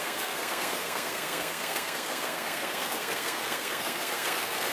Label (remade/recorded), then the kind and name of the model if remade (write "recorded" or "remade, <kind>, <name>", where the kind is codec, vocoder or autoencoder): remade, codec, SNAC